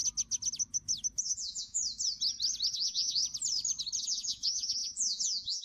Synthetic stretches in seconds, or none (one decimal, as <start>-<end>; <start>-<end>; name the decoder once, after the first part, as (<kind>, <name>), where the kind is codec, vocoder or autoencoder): 1.2-1.8 (vocoder, Vocos); 2.7-3.2; 4.0-5.6